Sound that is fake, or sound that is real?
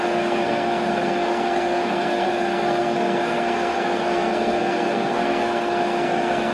fake